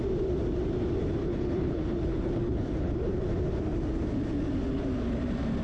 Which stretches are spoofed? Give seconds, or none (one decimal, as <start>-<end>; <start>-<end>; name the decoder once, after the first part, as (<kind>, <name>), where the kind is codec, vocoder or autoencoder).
1.2-2.9 (codec, HILCodec)